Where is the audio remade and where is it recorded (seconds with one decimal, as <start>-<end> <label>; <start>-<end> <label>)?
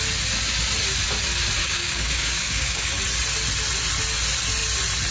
0.0-1.6 recorded; 1.6-3.0 remade; 3.0-5.1 recorded